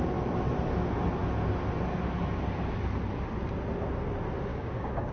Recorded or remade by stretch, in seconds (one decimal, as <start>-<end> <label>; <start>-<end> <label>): 0.0-4.5 recorded; 4.5-5.1 remade